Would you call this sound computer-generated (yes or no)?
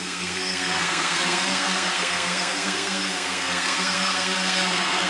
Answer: yes